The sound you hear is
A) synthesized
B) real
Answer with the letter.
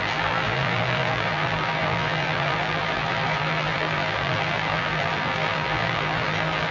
A